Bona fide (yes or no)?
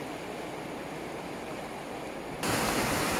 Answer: yes